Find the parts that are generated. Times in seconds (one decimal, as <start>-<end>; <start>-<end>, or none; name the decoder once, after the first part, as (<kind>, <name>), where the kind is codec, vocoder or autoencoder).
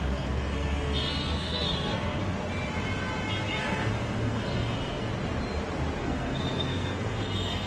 0.0-2.2 (codec, SNAC); 3.5-5.1; 6.0-7.7